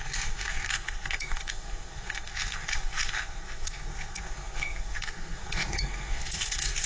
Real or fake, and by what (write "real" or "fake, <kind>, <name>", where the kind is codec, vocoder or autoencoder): fake, codec, SNAC